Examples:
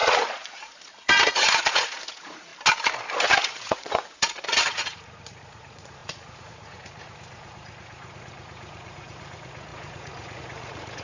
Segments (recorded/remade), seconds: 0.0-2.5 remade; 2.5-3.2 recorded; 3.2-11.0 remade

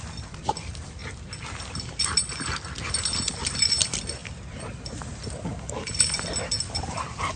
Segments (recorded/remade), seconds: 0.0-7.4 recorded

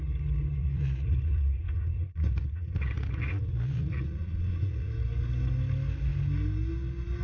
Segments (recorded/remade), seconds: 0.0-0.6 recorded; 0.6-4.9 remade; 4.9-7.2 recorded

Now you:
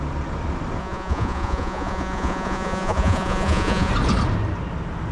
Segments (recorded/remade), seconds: 0.0-0.8 recorded; 0.8-3.9 remade; 3.9-5.1 recorded

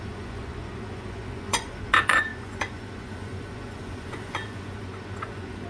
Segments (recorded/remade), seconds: 0.0-5.7 remade